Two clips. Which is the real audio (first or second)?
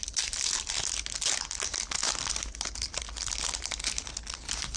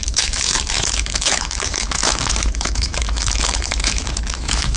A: first